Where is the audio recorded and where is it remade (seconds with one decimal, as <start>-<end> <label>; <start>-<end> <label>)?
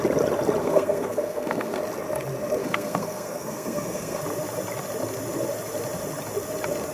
0.0-0.6 recorded; 0.6-1.8 remade; 1.8-2.6 recorded; 2.6-4.2 remade; 4.2-6.9 recorded